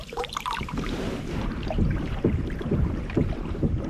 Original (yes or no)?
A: no